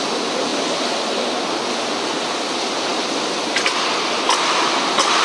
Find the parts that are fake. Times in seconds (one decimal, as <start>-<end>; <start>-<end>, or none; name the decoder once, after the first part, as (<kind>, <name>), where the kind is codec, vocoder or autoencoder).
none

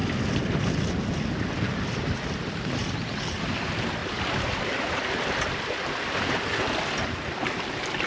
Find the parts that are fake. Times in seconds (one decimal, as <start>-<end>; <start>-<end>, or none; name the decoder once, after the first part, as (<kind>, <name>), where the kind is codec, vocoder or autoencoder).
none